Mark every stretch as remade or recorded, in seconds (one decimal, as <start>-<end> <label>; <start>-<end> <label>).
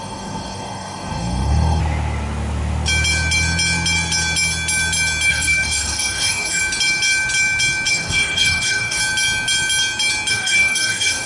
0.0-1.8 remade; 1.8-5.3 recorded; 5.3-6.6 remade; 6.6-7.9 recorded; 7.9-9.0 remade; 9.0-10.3 recorded; 10.3-11.3 remade